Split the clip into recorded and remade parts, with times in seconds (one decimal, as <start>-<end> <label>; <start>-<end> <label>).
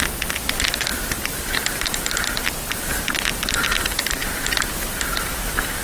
0.0-0.9 recorded; 0.9-4.4 remade; 4.4-5.1 recorded; 5.1-5.8 remade